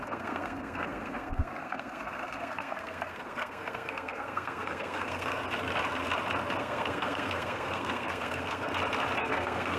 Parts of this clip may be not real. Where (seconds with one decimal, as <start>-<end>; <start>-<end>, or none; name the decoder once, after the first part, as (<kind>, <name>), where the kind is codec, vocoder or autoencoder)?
0.0-5.4 (codec, SNAC); 6.6-8.7; 9.2-9.8